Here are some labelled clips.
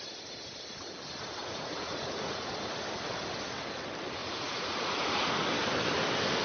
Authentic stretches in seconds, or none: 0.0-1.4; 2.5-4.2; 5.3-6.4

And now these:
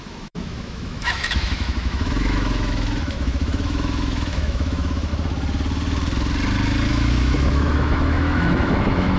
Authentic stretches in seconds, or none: 5.1-6.9

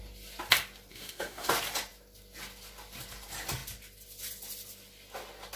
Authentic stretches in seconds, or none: 0.0-0.9; 1.5-5.6

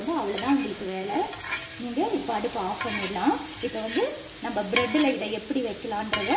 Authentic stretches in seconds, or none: 0.0-0.7; 1.3-6.4

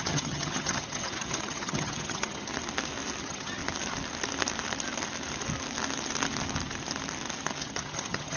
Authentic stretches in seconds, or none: 2.5-3.2; 3.6-7.6

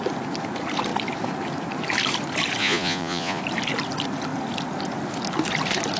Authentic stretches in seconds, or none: 0.0-2.6; 3.4-6.0

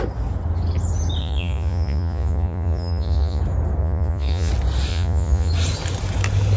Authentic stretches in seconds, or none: 0.0-1.2; 3.4-3.8; 4.5-4.9; 5.5-6.6